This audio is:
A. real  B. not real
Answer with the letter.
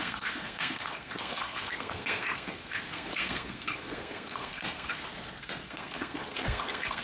B